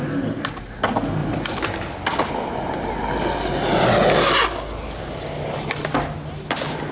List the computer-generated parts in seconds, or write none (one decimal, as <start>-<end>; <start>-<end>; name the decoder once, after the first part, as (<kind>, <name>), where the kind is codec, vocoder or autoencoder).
1.2-2.3 (vocoder, BigVGAN v2)